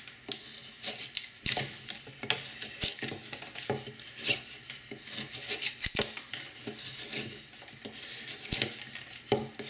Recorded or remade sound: recorded